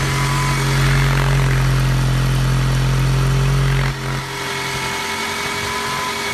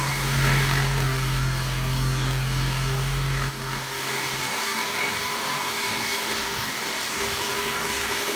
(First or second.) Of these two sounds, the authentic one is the first